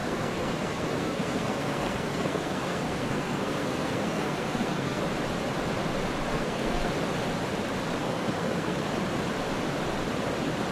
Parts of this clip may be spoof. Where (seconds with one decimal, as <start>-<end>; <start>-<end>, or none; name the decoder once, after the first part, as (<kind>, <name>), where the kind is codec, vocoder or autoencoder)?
0.0-5.0 (codec, SNAC); 6.3-6.9; 8.0-8.9